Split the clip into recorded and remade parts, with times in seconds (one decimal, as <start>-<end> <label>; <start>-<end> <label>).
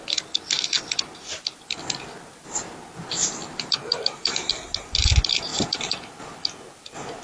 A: 0.0-3.4 recorded; 3.4-4.5 remade; 4.5-5.5 recorded; 5.5-6.0 remade; 6.0-7.2 recorded